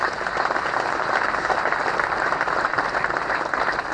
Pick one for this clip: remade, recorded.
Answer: recorded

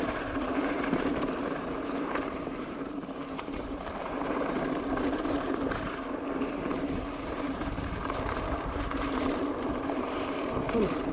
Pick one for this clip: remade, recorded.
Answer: remade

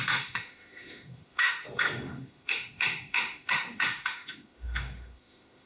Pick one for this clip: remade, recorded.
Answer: remade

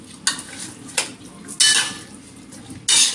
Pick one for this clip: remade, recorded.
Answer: recorded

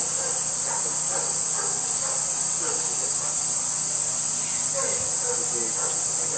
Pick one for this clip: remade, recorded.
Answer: recorded